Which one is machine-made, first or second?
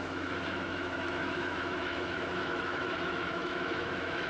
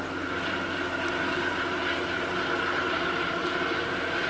first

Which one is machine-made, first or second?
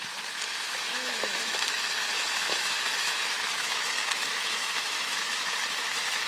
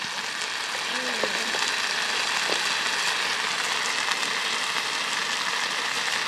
first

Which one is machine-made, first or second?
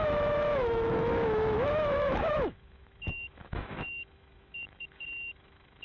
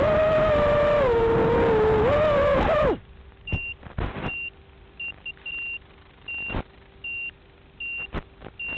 first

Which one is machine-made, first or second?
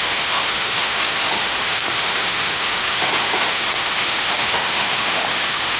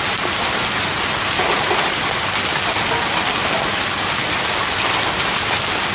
first